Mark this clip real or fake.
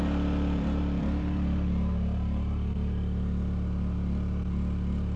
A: fake